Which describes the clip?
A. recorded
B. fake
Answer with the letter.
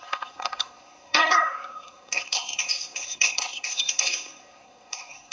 B